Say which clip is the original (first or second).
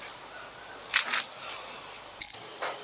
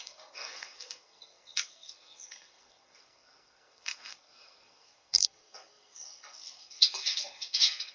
first